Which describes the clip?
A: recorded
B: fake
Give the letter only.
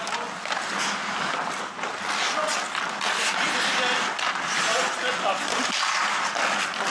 A